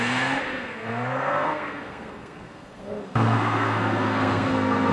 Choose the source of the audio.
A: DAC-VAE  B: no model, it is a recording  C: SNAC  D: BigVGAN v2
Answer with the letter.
C